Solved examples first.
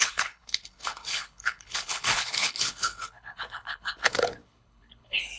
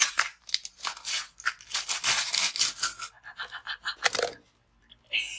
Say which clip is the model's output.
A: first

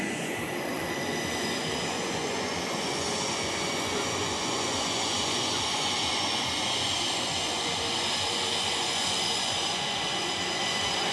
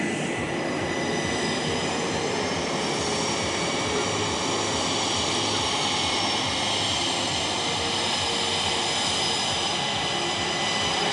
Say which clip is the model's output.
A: first